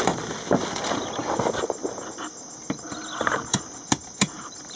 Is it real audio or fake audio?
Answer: real